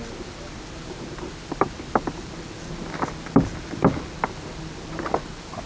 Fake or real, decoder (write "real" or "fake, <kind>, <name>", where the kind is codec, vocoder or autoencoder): real